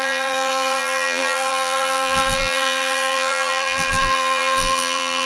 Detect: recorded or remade remade